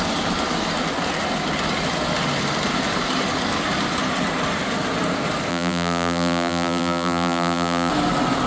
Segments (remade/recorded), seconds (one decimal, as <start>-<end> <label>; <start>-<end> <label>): 0.0-5.5 recorded; 5.5-7.9 remade; 7.9-8.5 recorded